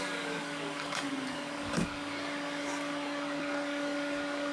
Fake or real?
fake